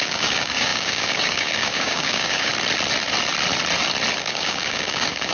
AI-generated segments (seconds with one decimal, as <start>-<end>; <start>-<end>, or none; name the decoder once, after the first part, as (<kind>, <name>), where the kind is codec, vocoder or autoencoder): 0.0-2.5 (codec, DAC); 4.2-5.3